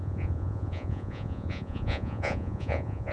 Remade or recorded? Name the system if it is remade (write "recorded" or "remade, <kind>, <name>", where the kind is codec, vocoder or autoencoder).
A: remade, vocoder, Vocos